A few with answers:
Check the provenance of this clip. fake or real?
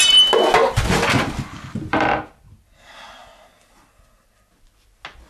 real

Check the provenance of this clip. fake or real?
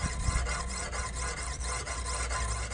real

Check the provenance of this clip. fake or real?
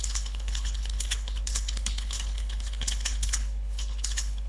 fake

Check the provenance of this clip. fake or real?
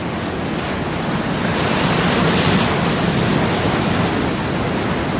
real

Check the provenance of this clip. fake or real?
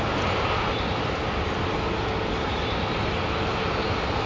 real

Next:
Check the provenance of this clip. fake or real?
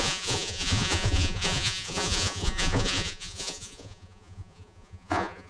fake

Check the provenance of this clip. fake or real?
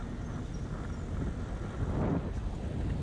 real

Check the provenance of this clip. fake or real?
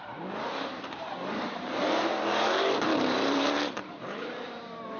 fake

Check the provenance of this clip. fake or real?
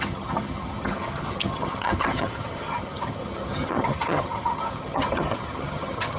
fake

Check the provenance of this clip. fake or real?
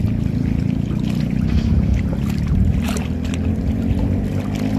real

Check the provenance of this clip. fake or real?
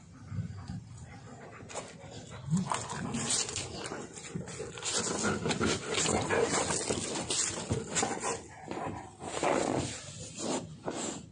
real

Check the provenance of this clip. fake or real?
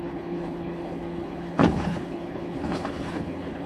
fake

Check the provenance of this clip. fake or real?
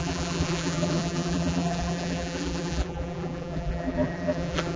fake